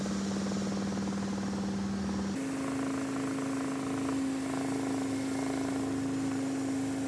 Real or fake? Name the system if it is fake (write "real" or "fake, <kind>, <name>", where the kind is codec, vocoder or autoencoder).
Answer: real